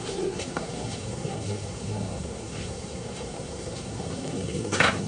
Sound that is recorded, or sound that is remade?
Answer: remade